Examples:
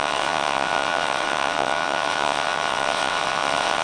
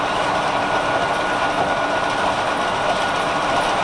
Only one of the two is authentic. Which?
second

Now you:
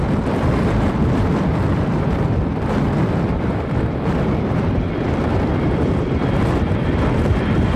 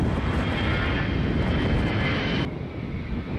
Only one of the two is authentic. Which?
second